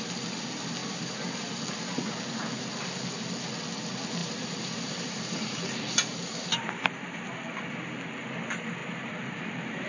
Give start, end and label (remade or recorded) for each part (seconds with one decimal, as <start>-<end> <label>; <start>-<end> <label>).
0.0-0.8 recorded; 0.8-2.3 remade; 2.3-4.2 recorded; 4.2-7.4 remade; 7.4-8.8 recorded; 8.8-9.5 remade; 9.5-9.9 recorded